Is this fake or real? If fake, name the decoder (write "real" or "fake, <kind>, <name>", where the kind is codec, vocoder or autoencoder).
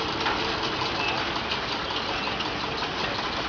real